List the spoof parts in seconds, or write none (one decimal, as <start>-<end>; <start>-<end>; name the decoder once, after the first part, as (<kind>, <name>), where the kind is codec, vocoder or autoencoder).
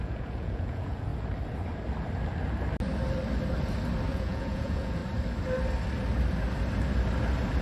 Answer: 0.0-1.1 (vocoder, Vocos); 4.1-5.0